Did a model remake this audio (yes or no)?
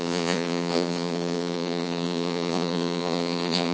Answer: yes